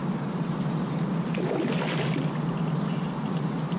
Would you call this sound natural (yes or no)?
yes